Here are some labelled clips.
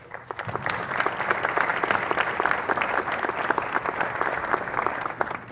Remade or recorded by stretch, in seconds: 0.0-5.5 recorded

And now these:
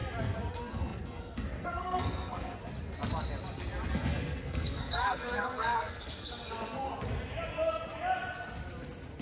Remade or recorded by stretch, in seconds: 0.0-0.5 recorded; 0.5-2.6 remade; 2.6-3.9 recorded; 3.9-6.9 remade; 6.9-9.2 recorded